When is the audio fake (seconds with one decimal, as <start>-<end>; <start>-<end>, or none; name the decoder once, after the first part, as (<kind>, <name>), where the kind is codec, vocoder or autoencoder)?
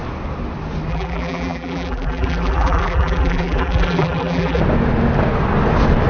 0.9-4.6 (vocoder, BigVGAN v2)